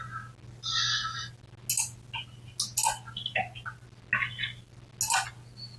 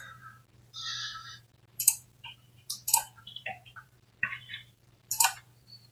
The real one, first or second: first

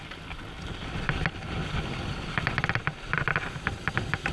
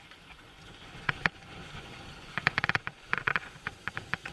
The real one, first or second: first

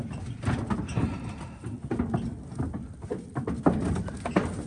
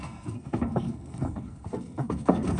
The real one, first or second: first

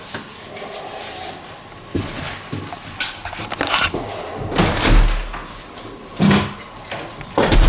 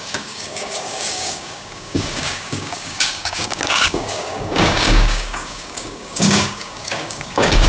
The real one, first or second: first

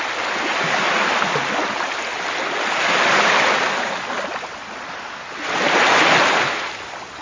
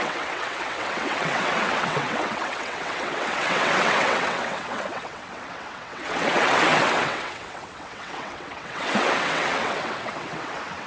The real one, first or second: first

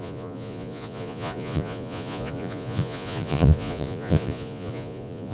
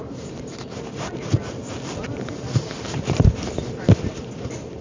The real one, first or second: second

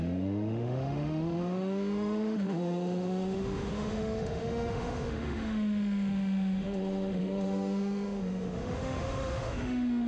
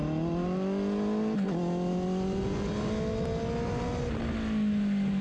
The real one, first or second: second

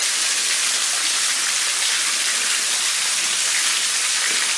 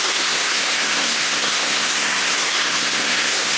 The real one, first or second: first